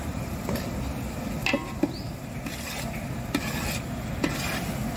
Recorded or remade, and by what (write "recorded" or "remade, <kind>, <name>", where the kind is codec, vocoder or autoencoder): recorded